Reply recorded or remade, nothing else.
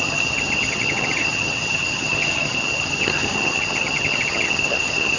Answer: remade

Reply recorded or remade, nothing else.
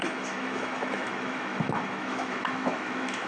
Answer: remade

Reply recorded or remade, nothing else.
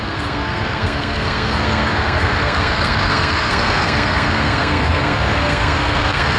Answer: remade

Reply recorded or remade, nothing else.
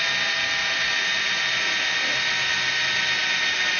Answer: recorded